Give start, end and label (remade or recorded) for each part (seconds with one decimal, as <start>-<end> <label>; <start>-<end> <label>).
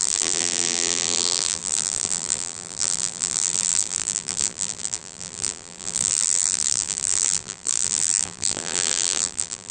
0.0-9.7 remade